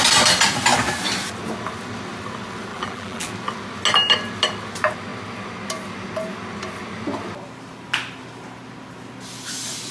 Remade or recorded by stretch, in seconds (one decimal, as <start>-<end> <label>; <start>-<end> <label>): 0.0-2.7 recorded; 2.7-3.3 remade; 3.3-9.9 recorded